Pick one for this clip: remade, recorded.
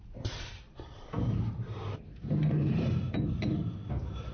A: remade